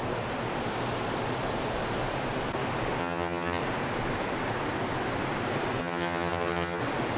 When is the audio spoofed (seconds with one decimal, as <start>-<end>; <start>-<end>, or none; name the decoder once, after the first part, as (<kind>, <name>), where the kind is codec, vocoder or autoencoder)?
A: 3.0-3.6 (vocoder, HiFi-GAN); 5.8-6.8